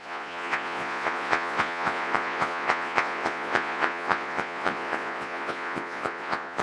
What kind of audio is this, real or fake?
fake